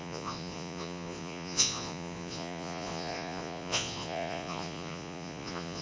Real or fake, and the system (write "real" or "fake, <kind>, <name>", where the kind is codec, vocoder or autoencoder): fake, vocoder, Vocos